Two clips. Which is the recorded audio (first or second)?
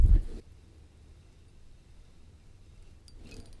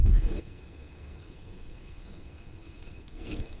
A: first